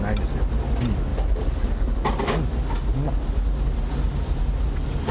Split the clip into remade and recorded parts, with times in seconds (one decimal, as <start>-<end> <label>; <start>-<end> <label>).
0.0-5.1 recorded